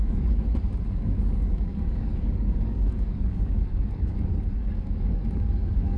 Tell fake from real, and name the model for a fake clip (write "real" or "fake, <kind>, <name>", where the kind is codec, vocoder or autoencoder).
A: fake, codec, DAC